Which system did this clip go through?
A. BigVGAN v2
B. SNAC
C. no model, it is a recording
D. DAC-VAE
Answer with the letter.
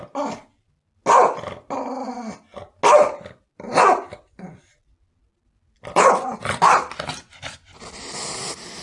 C